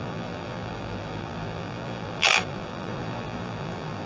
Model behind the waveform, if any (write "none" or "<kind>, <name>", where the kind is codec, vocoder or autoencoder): vocoder, BigVGAN v2